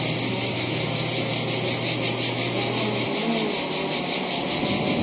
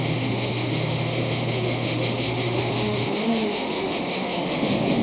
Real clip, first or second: first